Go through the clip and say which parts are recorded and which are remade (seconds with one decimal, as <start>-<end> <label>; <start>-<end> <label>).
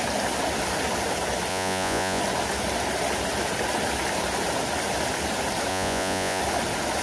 0.0-1.5 recorded; 1.5-2.2 remade; 2.2-5.7 recorded; 5.7-6.4 remade; 6.4-7.0 recorded